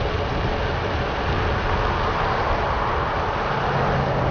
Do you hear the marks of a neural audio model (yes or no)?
no